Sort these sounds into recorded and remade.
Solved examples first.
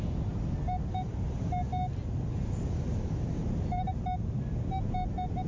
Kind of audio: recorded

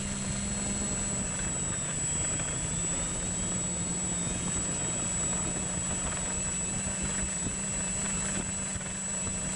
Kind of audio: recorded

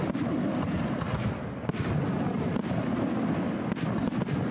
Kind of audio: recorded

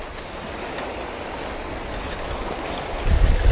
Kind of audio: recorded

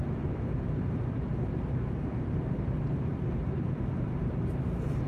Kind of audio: remade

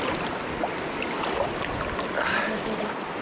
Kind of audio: recorded